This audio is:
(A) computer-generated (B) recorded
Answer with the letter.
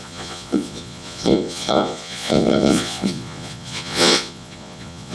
A